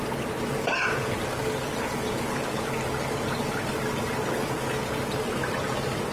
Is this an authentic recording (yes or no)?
yes